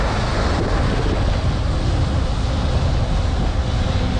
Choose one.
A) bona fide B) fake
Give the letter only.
A